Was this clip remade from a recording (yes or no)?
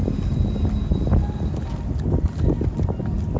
no